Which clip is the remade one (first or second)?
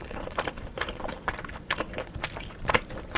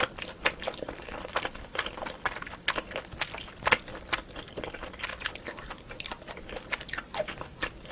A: first